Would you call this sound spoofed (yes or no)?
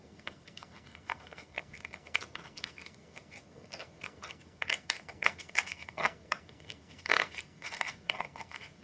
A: yes